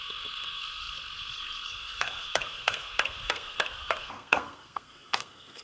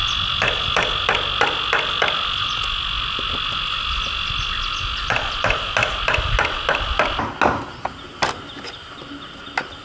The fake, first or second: first